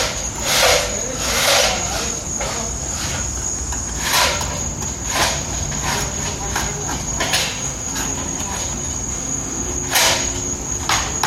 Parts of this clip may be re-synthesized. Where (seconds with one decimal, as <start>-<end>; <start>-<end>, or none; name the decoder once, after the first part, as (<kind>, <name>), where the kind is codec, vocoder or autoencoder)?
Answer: 7.4-7.9 (autoencoder, DAC-VAE); 9.1-9.7